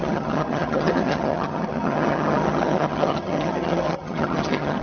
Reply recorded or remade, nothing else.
remade